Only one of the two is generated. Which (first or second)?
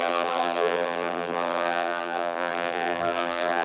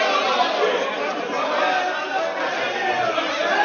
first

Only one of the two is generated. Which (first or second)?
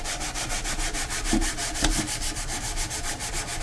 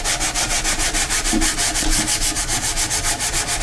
first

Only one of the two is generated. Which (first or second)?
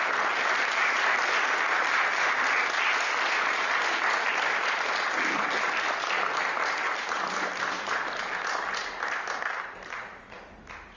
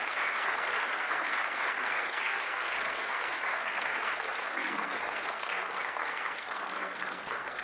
second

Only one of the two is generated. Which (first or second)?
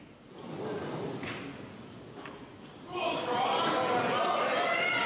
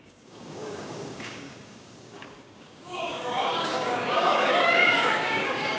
second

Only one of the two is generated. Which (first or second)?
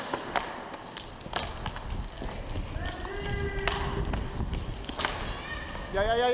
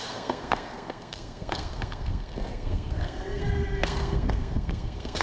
second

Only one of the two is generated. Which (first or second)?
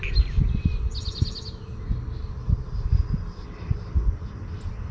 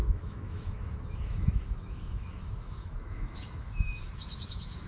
second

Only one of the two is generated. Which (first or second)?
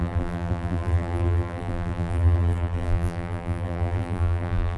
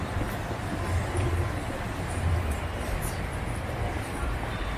first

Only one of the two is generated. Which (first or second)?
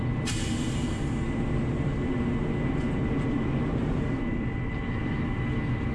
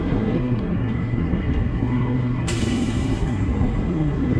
second